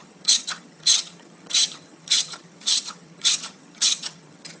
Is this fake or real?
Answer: fake